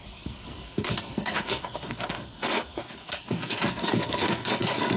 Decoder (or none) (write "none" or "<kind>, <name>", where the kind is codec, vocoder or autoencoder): codec, SNAC